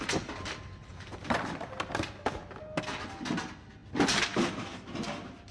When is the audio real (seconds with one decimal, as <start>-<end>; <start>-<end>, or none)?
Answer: 0.0-5.5